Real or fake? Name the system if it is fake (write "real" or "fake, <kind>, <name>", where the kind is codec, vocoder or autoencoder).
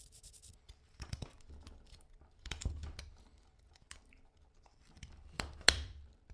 fake, vocoder, BigVGAN v2